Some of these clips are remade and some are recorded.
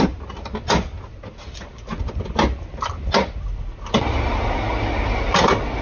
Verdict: recorded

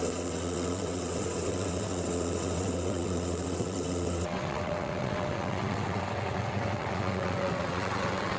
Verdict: remade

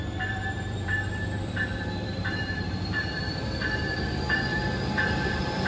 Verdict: remade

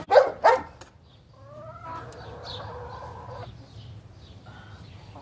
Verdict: recorded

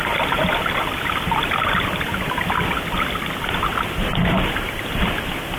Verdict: remade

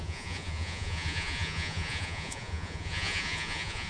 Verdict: remade